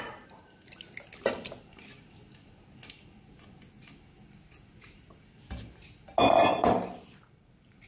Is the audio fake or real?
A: real